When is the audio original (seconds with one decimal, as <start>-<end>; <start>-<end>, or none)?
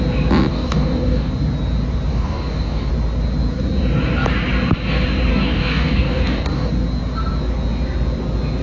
0.0-0.5; 1.3-2.1; 2.9-5.3; 6.7-8.6